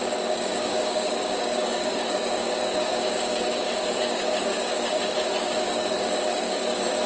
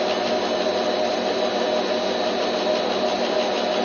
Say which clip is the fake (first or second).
first